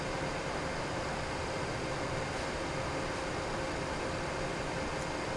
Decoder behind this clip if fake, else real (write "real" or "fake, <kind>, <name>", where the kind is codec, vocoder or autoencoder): real